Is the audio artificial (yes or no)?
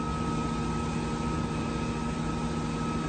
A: no